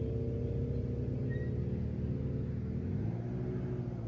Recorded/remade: recorded